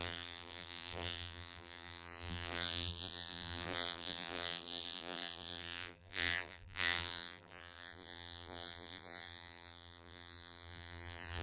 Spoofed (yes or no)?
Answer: yes